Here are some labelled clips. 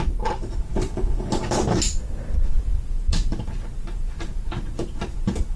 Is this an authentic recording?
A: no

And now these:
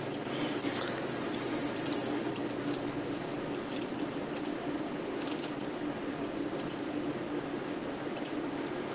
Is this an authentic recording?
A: no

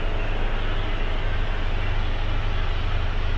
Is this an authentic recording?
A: yes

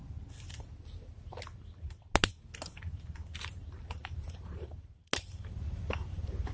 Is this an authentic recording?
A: yes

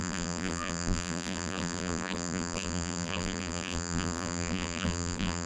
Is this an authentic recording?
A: no